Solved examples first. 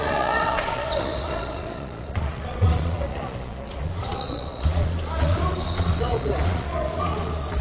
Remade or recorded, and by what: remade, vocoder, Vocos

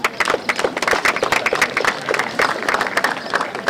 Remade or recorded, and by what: recorded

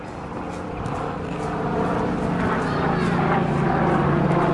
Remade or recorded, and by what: recorded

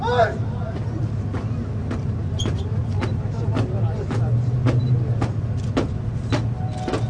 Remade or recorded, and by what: recorded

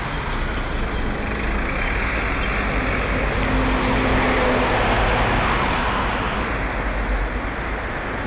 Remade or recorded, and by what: recorded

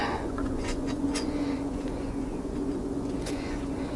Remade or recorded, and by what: remade, vocoder, Vocos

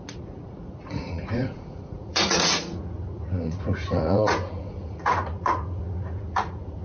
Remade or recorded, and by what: remade, vocoder, Vocos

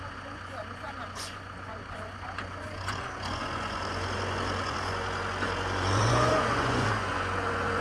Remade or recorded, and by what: remade, vocoder, Vocos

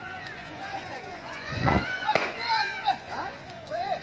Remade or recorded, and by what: remade, vocoder, Vocos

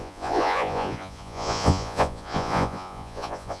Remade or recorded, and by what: remade, vocoder, Vocos